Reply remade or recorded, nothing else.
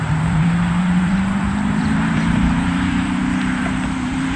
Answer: remade